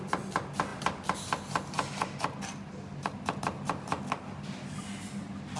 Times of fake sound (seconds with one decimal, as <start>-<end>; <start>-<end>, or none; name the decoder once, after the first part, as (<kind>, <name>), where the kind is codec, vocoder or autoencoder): none

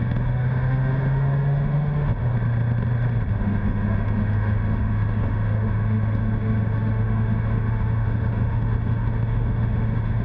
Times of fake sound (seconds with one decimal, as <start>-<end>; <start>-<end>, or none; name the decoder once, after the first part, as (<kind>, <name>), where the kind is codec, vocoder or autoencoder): 0.0-2.3 (autoencoder, DAC-VAE); 3.3-10.2

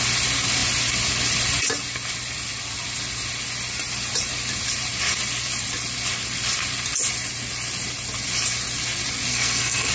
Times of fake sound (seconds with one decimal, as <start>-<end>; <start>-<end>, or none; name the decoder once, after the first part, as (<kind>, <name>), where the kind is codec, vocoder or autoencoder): 9.3-9.9 (codec, SNAC)

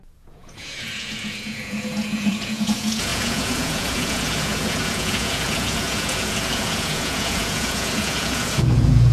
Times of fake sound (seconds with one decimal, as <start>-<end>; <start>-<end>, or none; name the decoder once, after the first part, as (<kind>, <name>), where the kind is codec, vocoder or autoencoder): 0.0-9.1 (vocoder, Vocos)

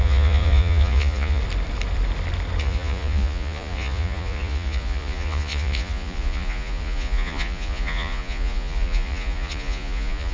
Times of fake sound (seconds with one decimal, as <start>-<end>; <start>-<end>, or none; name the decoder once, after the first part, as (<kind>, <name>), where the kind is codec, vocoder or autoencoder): 0.0-1.4 (vocoder, Vocos); 2.6-10.3

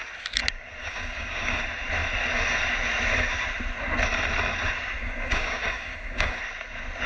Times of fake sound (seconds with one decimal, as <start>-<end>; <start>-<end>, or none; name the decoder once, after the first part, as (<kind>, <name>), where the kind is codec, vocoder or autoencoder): 0.8-1.6 (codec, DAC); 5.0-6.4

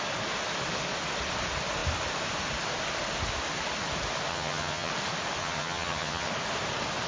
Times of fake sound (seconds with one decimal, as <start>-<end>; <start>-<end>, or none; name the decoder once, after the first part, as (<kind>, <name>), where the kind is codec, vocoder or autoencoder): 4.3-4.9 (vocoder, HiFi-GAN); 5.4-6.3